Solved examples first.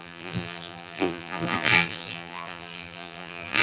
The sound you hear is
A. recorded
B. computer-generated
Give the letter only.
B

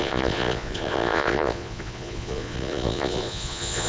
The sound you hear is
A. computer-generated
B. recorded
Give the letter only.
A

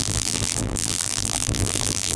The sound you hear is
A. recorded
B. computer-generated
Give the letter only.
B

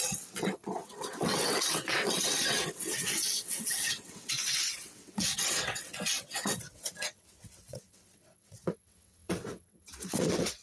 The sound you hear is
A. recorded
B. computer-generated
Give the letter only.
B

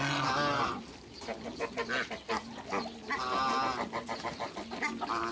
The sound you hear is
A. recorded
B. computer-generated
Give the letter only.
A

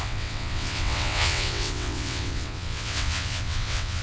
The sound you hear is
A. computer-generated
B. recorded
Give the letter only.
A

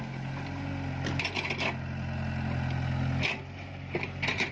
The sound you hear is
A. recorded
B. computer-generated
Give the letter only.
A